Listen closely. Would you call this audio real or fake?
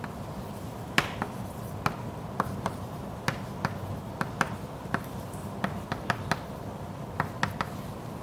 real